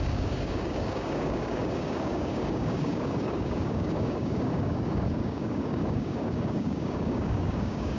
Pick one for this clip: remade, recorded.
remade